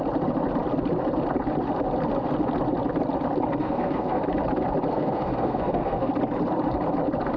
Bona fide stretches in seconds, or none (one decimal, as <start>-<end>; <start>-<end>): 0.0-3.6; 4.2-4.9; 6.1-7.4